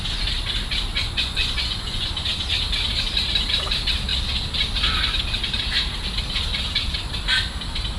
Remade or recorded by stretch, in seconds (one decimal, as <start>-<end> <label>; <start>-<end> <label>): 0.0-0.9 recorded; 0.9-2.1 remade; 2.1-8.0 recorded